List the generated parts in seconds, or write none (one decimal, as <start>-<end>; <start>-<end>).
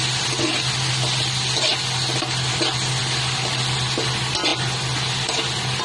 none